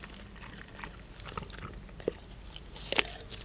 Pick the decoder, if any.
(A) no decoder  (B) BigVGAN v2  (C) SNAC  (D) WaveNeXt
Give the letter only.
A